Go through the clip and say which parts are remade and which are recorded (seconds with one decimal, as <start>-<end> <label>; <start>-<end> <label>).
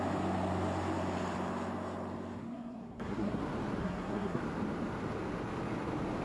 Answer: 0.0-2.4 recorded; 2.4-3.4 remade; 3.4-3.8 recorded; 3.8-4.4 remade; 4.4-6.2 recorded